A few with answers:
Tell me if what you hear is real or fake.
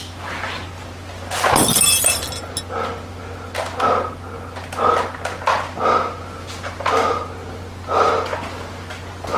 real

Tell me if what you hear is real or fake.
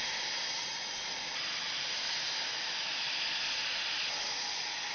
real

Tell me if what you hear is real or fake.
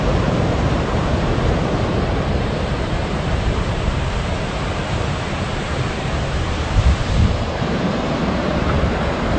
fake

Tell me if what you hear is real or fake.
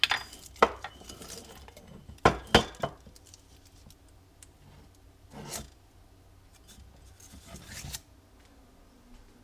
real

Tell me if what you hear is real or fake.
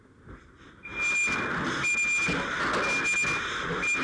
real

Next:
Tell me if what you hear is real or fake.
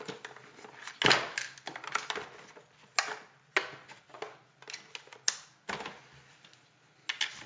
real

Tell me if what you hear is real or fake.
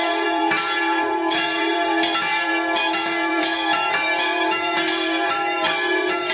fake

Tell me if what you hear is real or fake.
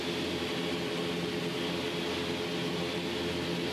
real